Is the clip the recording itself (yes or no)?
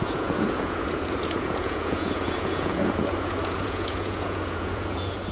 no